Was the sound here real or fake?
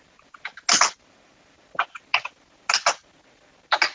real